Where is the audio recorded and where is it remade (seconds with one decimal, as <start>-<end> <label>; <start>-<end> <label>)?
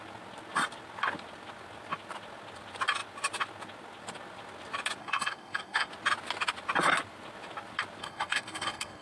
0.0-5.0 recorded; 5.0-5.9 remade; 5.9-8.0 recorded; 8.0-9.0 remade